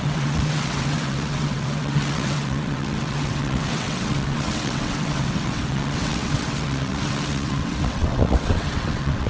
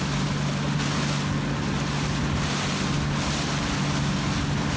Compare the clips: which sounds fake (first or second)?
first